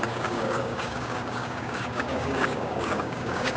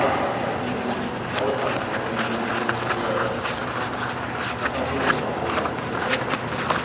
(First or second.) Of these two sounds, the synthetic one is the first